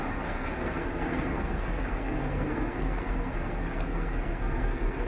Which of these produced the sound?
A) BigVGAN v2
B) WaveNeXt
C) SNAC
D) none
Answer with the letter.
C